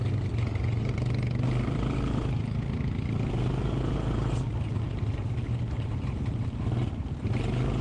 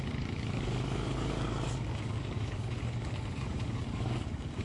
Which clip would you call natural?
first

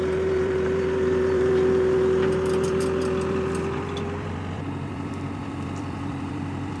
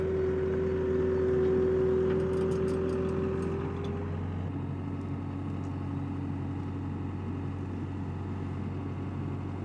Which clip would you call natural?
second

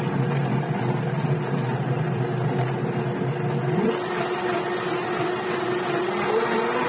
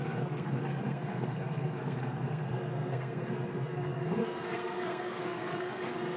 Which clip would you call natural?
first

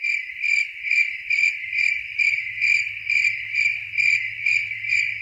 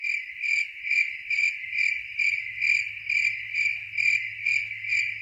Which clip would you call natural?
second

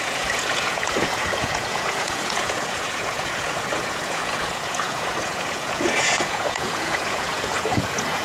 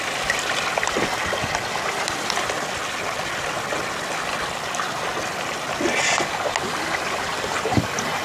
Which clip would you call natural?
second